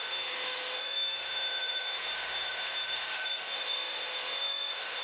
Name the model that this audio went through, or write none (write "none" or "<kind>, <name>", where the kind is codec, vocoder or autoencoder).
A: autoencoder, DAC-VAE